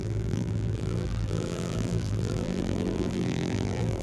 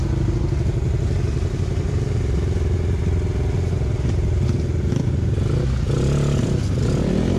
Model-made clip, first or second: first